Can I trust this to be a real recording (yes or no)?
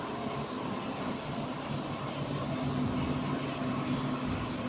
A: yes